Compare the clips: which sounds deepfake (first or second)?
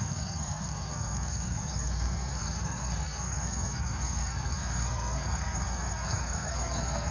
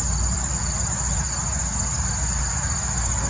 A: first